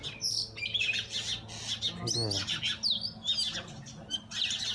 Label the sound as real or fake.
real